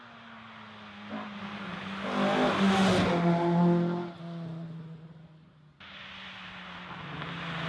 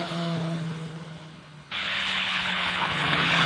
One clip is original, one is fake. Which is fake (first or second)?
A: second